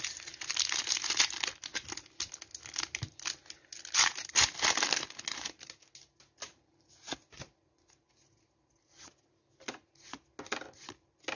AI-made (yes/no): no